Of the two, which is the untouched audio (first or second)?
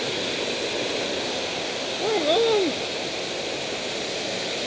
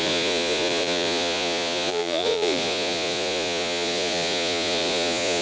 first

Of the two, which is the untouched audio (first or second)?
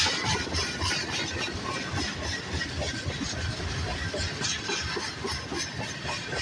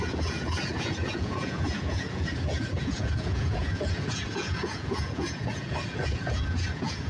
first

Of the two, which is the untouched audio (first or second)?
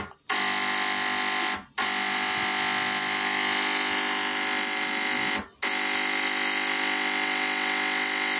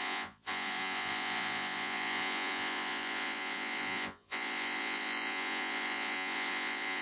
first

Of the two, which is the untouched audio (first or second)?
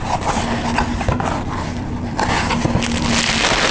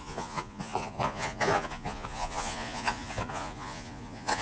first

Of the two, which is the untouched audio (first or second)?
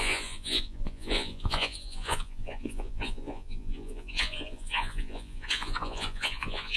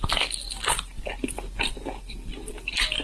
second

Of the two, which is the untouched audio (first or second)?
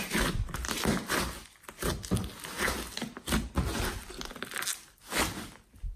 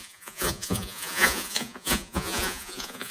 first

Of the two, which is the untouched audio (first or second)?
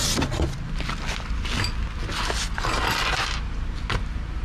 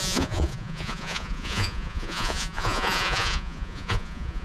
first